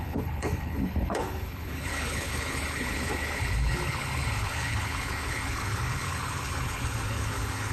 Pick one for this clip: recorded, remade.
remade